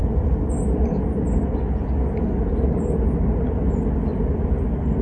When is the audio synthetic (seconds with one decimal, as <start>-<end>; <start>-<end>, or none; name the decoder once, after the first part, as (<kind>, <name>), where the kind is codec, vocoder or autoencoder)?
none